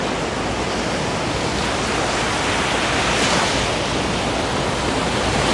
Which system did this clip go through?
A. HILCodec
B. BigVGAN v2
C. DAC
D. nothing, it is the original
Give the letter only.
D